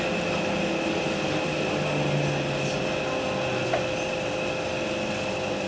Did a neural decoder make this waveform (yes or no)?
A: no